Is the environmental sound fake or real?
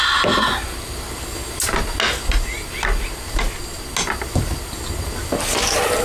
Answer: real